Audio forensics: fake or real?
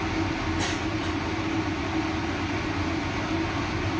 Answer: real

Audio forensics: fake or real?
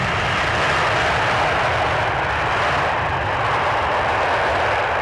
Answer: real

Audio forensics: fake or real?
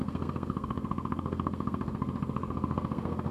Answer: fake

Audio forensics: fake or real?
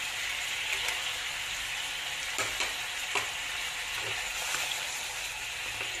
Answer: fake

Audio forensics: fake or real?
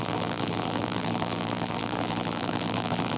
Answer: fake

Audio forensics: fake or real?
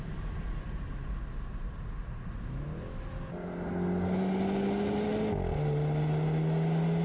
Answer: real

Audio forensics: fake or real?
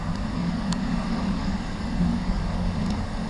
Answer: fake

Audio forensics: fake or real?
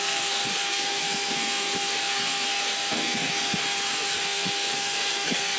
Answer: fake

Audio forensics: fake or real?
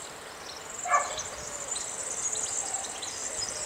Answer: real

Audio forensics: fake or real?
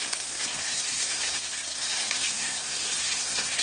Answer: fake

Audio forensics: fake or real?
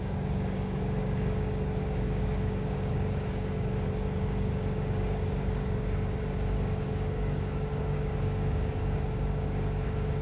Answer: fake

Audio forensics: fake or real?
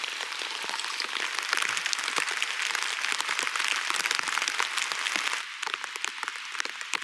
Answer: real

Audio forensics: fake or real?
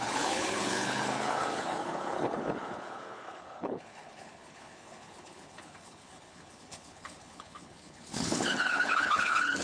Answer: fake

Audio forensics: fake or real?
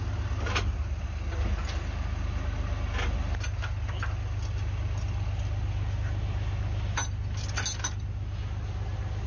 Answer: real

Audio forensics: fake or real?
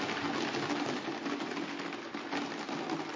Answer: real